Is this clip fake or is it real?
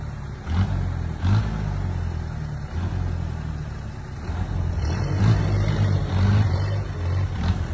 real